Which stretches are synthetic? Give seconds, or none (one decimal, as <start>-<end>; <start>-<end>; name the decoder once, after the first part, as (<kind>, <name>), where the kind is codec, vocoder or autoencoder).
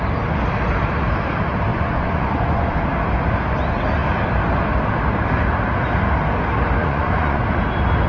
1.7-2.8 (vocoder, Vocos); 6.8-7.4